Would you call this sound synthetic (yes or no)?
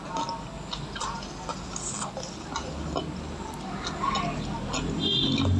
no